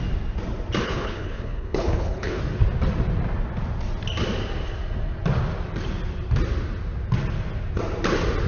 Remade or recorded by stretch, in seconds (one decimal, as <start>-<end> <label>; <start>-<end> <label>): 0.0-0.8 recorded; 0.8-2.4 remade; 2.4-8.5 recorded